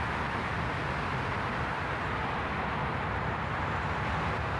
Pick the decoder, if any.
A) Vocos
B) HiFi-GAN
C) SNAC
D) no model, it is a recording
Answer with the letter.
D